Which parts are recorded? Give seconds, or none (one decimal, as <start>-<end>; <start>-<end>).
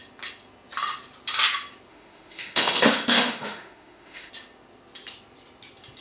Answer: 0.0-1.9; 4.3-6.0